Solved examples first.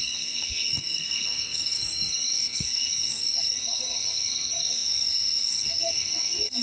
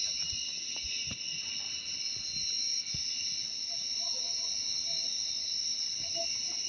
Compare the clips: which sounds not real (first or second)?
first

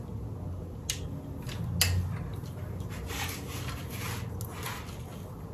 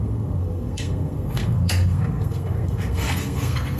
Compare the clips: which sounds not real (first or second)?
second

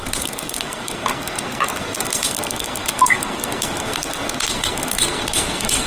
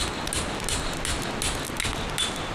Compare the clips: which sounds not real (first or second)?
first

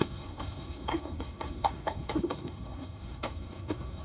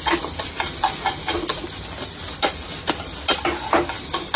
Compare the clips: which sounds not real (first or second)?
first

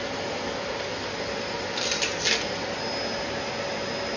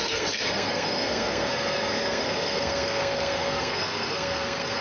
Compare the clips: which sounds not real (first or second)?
second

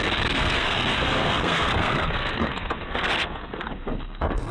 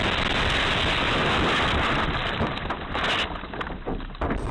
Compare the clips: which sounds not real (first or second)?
first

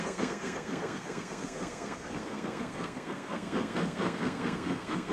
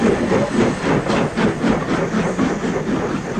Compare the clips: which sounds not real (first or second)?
first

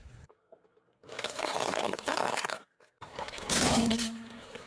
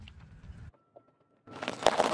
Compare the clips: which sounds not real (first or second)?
first